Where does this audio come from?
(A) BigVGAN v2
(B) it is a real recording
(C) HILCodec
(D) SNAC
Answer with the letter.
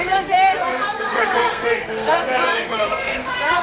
D